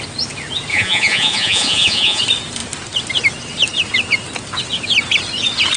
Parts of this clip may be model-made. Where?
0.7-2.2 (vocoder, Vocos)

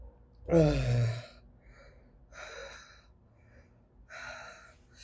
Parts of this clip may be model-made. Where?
none